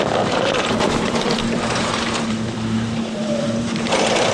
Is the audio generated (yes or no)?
yes